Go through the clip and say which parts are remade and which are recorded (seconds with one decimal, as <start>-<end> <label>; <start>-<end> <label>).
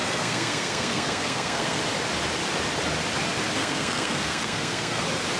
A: 0.0-1.8 remade; 1.8-3.6 recorded; 3.6-5.0 remade; 5.0-5.4 recorded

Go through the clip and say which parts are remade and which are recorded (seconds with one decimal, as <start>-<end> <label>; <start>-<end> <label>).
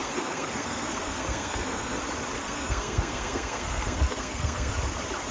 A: 0.0-2.0 remade; 2.0-2.4 recorded; 2.4-4.7 remade; 4.7-5.3 recorded